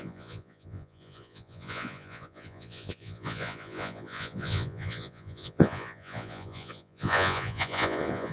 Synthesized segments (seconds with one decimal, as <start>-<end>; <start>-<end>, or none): 0.0-8.3